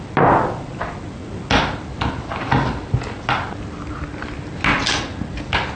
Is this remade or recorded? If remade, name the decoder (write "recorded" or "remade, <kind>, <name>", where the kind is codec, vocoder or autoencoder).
recorded